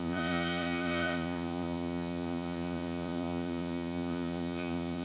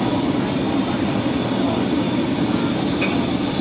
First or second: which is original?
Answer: second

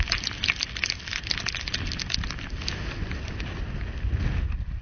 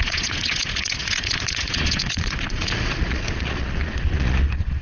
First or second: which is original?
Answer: first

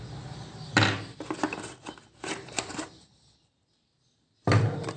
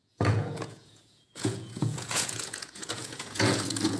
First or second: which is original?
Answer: first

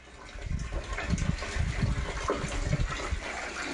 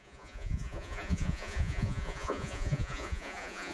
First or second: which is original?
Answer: first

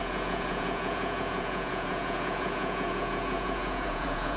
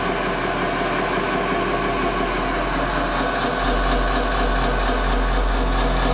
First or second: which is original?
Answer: second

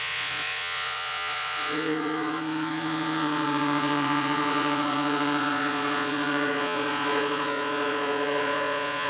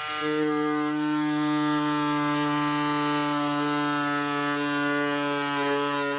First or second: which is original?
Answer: second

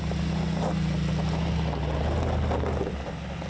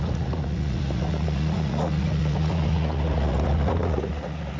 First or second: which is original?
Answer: first